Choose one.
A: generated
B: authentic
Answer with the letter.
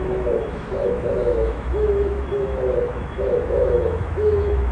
A